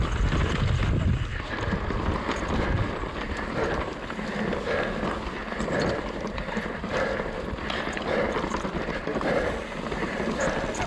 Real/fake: real